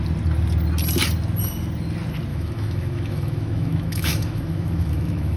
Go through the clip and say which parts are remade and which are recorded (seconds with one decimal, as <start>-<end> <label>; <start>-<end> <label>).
0.0-2.3 recorded; 2.3-5.4 remade